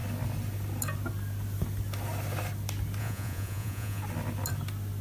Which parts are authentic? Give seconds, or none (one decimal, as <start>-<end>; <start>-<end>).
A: 0.0-3.0; 4.0-5.0